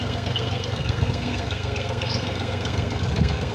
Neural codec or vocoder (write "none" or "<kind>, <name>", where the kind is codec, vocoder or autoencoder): codec, SNAC